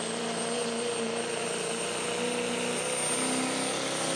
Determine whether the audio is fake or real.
real